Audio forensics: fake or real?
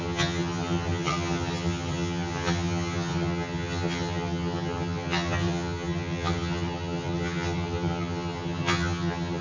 fake